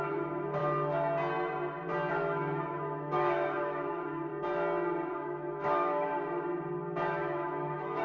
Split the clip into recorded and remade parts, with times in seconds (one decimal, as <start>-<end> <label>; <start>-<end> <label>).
0.0-0.6 remade; 0.6-2.1 recorded; 2.1-4.3 remade; 4.3-5.1 recorded; 5.1-6.1 remade; 6.1-7.1 recorded; 7.1-8.0 remade